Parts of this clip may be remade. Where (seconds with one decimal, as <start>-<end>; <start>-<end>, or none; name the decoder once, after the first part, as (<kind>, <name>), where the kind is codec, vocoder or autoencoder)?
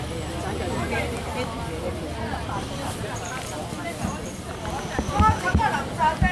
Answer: none